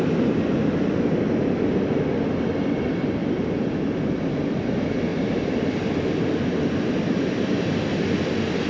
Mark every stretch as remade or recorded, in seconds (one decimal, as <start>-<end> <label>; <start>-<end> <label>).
0.0-5.1 recorded; 5.1-5.7 remade; 5.7-8.7 recorded